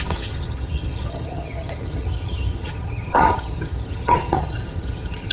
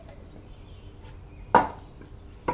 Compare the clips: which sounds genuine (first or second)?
second